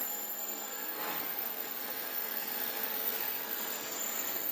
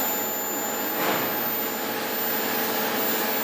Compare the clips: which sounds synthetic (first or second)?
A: first